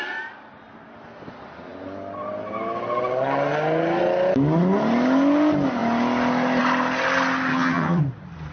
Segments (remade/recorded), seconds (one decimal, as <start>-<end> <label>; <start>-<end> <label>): 0.0-7.5 recorded; 7.5-8.0 remade; 8.0-8.5 recorded